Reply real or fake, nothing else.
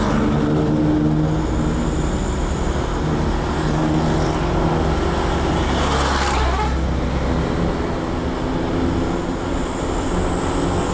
real